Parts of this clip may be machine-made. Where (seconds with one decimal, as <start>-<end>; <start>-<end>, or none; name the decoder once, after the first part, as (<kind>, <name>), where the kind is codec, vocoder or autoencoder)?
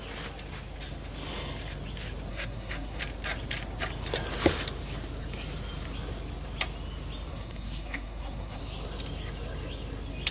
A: 2.3-3.0 (codec, SNAC); 7.3-8.6